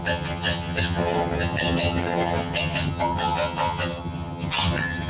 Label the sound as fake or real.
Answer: fake